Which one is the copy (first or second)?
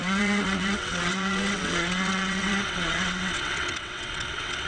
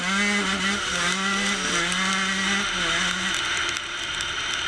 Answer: first